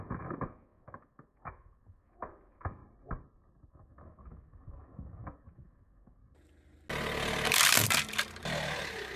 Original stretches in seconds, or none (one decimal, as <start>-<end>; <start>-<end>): 2.8-3.7; 6.2-9.2